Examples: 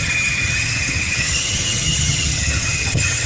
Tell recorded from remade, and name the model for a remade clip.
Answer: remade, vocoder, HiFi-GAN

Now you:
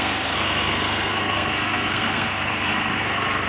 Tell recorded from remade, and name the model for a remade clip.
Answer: remade, codec, SNAC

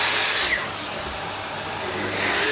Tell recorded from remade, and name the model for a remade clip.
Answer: recorded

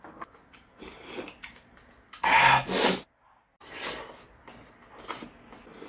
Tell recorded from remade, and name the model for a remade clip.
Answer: recorded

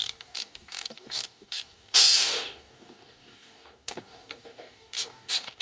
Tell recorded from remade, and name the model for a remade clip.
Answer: remade, codec, DAC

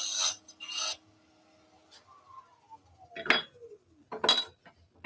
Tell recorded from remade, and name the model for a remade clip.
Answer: recorded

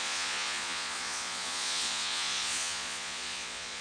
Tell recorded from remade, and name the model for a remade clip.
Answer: remade, vocoder, Vocos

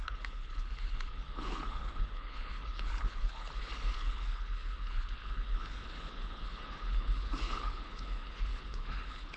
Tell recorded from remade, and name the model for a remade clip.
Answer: remade, codec, HILCodec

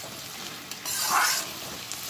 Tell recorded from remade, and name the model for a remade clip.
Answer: recorded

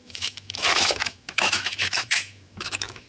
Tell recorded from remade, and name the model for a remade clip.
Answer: remade, autoencoder, DAC-VAE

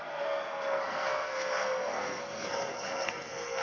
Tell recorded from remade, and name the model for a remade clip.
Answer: remade, codec, SNAC